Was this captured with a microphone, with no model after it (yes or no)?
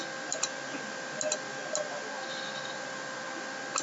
yes